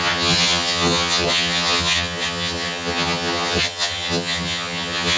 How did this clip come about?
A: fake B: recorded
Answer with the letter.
A